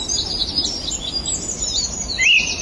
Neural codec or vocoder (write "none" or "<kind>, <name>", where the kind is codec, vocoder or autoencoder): none